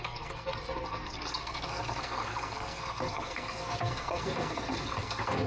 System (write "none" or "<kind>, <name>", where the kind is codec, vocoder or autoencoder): codec, SNAC